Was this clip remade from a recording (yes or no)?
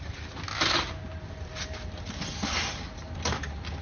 no